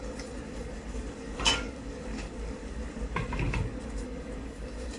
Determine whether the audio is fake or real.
fake